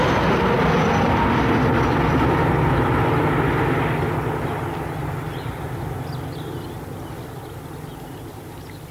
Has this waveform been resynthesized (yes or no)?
no